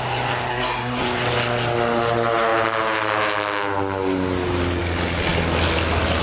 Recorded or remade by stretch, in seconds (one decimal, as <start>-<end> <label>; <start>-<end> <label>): 0.0-0.5 recorded; 0.5-1.0 remade; 1.0-6.2 recorded